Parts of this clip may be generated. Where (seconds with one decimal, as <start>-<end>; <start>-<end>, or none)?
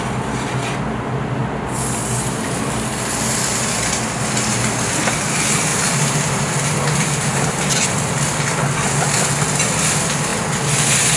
5.7-7.6